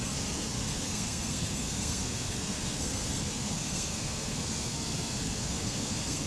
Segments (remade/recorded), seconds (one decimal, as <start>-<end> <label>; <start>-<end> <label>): 0.0-6.3 remade